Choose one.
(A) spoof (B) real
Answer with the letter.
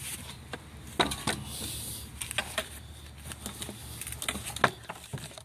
B